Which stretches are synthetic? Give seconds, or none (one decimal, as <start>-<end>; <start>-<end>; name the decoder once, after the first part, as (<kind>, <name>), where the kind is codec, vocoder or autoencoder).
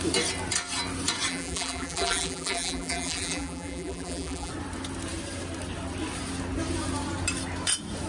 1.3-4.5 (vocoder, BigVGAN v2)